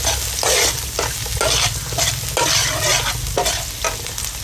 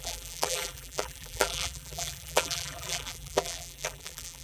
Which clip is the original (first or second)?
first